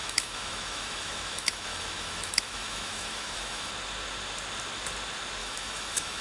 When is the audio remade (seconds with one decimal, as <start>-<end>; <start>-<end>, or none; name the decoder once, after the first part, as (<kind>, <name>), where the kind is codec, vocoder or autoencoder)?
0.0-3.7 (autoencoder, DAC-VAE); 5.4-6.2